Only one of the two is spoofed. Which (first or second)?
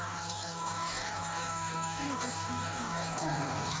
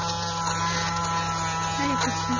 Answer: first